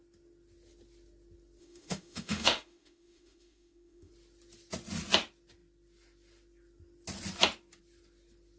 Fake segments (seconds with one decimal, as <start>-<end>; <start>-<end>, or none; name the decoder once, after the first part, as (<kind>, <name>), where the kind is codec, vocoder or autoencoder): 1.6-4.1 (autoencoder, DAC-VAE)